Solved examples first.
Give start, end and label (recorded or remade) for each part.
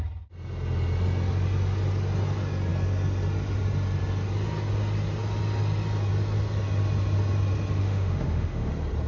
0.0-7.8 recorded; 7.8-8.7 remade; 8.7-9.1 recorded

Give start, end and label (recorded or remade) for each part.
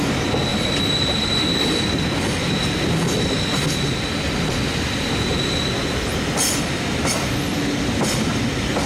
0.0-0.5 recorded; 0.5-1.3 remade; 1.3-8.9 recorded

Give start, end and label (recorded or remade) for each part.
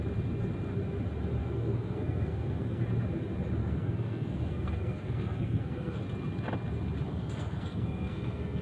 0.0-1.4 recorded; 1.4-2.8 remade; 2.8-3.6 recorded; 3.6-6.0 remade; 6.0-7.1 recorded; 7.1-8.6 remade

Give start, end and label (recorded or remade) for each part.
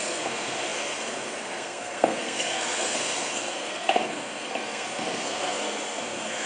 0.0-6.5 remade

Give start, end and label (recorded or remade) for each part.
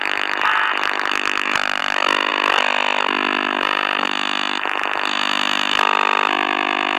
0.0-7.0 recorded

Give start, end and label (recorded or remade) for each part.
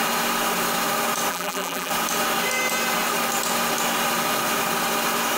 0.0-1.3 recorded; 1.3-1.9 remade; 1.9-5.4 recorded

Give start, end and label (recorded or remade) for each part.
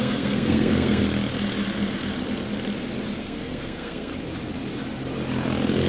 0.0-1.0 remade; 1.0-3.2 recorded; 3.2-4.1 remade; 4.1-5.9 recorded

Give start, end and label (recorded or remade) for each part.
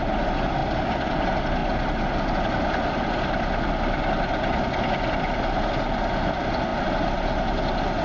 0.0-8.0 recorded